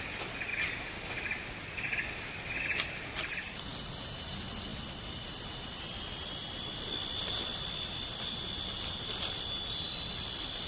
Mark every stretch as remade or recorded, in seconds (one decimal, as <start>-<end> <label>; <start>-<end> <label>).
0.0-0.5 remade; 0.5-1.5 recorded; 1.5-3.7 remade; 3.7-4.3 recorded; 4.3-10.7 remade